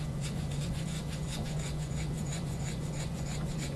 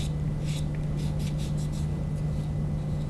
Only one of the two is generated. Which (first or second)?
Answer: first